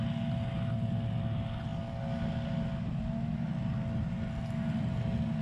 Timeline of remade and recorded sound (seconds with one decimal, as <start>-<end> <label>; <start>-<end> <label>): 0.0-5.4 recorded